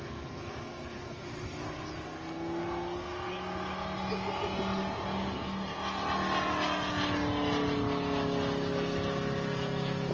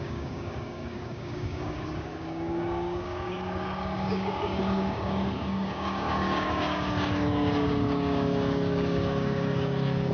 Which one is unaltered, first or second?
first